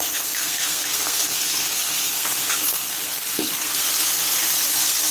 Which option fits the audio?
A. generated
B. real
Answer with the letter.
A